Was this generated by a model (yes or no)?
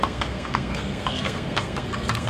yes